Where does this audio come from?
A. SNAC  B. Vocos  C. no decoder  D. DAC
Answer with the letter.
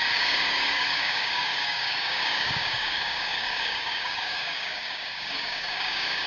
D